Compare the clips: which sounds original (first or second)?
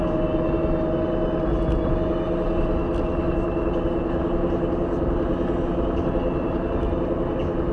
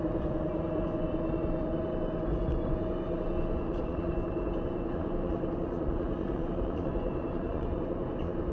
first